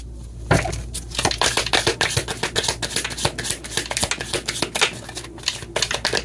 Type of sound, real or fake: real